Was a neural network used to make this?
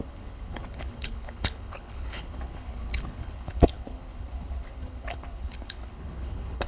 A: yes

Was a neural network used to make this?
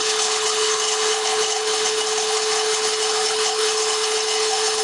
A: yes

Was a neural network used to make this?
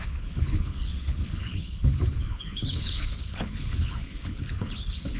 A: yes